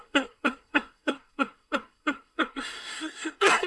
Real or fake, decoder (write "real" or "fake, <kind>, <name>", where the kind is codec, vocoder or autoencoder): fake, codec, SNAC